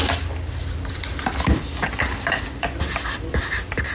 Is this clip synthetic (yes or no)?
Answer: yes